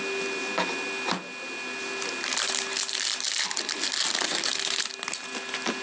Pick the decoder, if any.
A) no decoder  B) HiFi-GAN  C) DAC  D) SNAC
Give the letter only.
A